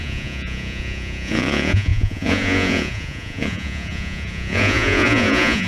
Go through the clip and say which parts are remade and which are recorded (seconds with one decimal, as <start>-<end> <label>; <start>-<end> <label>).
0.0-5.7 remade